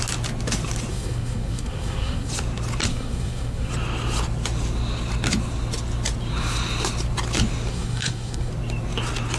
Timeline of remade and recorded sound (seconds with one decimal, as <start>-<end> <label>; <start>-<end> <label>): 0.0-0.9 recorded; 0.9-2.3 remade; 2.3-2.9 recorded; 2.9-3.7 remade; 3.7-7.7 recorded; 7.7-8.5 remade; 8.5-9.4 recorded